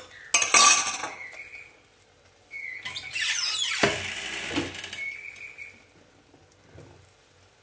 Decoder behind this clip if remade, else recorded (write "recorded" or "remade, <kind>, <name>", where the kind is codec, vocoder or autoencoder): recorded